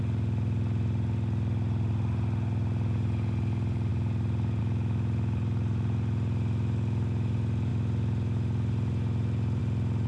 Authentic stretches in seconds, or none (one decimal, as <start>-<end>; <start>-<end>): 0.0-10.1